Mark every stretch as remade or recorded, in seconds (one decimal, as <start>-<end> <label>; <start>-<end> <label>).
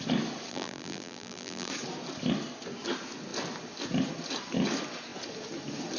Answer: 0.0-0.5 recorded; 0.5-1.7 remade; 1.7-6.0 recorded